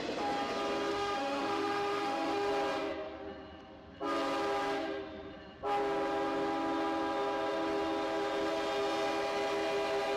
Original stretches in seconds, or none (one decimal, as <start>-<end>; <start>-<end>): 0.0-0.9; 2.5-10.2